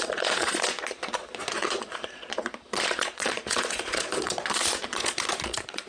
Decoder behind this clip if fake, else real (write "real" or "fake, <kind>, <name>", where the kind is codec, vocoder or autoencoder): fake, vocoder, Vocos